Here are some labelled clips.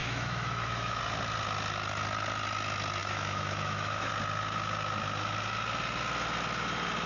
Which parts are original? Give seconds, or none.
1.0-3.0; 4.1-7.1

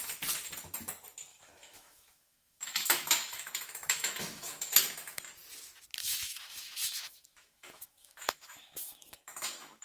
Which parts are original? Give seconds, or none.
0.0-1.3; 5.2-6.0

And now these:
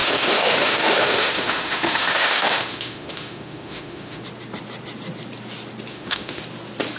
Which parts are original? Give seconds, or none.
4.2-5.9; 6.4-7.0